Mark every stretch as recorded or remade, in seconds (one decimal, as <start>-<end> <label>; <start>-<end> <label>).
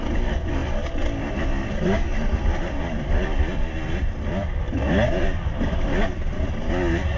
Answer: 0.0-2.1 recorded; 2.1-4.9 remade; 4.9-7.2 recorded